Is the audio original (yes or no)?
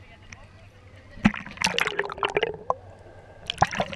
yes